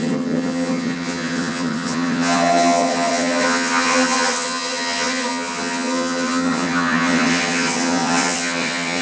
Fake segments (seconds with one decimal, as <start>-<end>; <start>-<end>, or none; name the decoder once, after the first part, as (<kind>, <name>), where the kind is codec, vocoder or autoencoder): 0.0-9.0 (vocoder, HiFi-GAN)